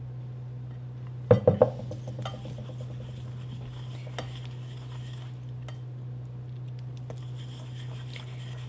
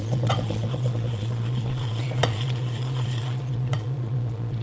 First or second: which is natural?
first